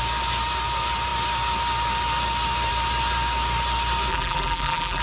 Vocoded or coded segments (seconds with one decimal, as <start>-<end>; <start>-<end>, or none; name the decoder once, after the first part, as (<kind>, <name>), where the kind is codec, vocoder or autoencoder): 4.1-5.0 (vocoder, BigVGAN v2)